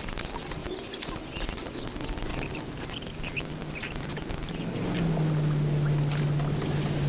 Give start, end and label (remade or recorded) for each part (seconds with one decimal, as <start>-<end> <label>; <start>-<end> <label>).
0.0-7.1 recorded